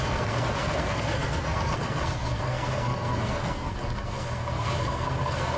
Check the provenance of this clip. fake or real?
fake